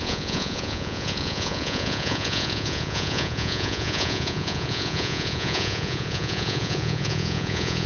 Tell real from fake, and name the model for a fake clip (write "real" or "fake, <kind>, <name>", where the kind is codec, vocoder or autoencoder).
fake, vocoder, Vocos